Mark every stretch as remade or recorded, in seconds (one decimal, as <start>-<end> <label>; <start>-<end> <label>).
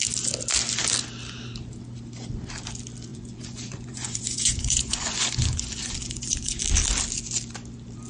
0.0-3.1 recorded; 3.1-6.6 remade; 6.6-8.1 recorded